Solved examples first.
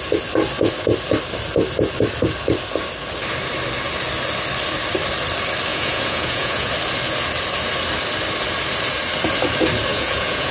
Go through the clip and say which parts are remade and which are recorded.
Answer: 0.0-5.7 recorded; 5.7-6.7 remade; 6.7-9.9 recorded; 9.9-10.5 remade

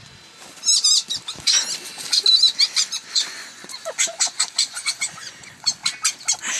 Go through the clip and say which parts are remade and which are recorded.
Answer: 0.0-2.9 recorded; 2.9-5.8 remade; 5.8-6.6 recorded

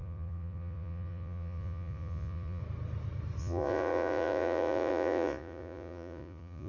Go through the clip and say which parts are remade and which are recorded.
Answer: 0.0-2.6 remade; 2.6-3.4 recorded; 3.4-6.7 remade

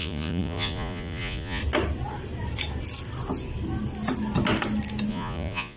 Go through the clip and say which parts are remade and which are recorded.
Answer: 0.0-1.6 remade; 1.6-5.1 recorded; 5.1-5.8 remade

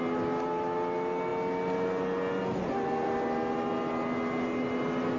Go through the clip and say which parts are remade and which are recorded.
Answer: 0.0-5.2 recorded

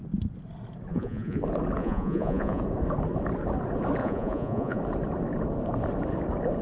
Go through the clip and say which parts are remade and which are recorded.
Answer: 0.0-0.9 recorded; 0.9-1.4 remade; 1.4-1.8 recorded; 1.8-2.6 remade; 2.6-4.0 recorded; 4.0-4.8 remade; 4.8-6.6 recorded